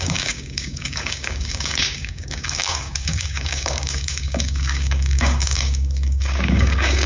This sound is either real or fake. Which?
fake